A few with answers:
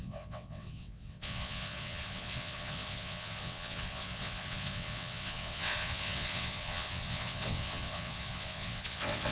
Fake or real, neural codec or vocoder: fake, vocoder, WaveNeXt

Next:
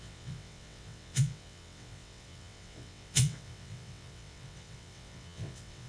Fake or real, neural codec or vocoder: fake, vocoder, WaveNeXt